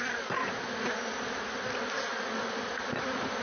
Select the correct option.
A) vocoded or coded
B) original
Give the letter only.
B